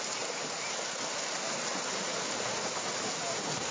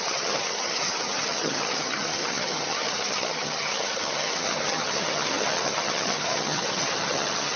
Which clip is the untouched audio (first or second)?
first